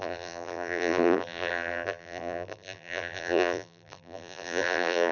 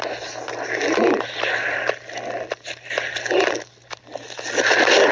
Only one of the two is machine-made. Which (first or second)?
first